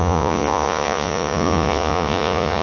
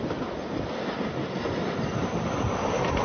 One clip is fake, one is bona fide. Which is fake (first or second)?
first